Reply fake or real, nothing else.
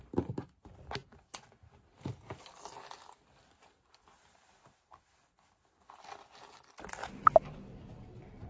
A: real